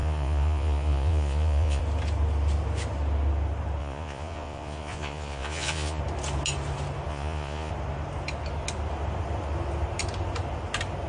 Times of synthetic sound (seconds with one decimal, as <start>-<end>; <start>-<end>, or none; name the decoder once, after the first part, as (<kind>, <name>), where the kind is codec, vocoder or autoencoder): 0.0-1.8 (vocoder, Vocos); 3.8-6.0; 7.1-7.7